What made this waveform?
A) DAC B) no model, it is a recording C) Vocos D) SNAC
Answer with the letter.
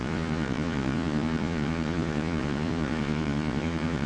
C